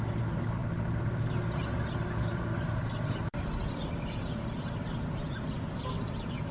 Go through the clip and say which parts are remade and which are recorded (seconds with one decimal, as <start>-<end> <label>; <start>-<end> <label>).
0.0-4.9 remade; 4.9-5.8 recorded; 5.8-6.5 remade